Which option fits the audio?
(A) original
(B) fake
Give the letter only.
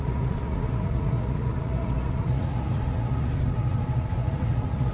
B